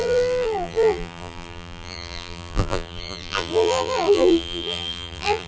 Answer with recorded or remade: remade